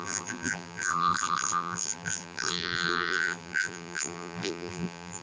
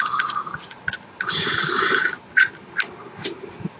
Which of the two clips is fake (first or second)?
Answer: first